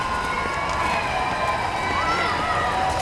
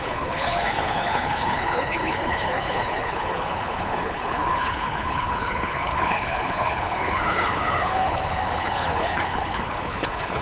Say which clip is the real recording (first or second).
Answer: first